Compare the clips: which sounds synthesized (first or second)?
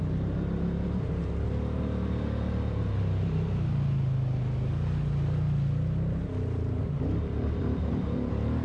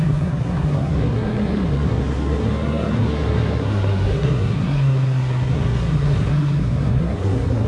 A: second